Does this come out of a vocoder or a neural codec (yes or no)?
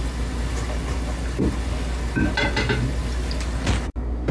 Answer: no